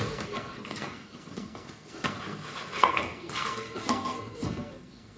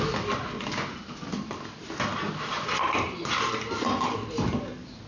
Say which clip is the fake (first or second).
first